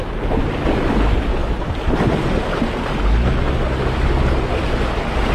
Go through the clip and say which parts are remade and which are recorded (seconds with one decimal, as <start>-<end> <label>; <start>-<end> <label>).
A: 0.0-5.3 recorded